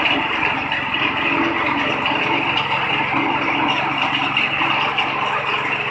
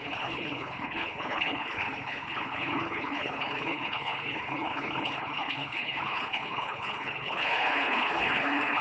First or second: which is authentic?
first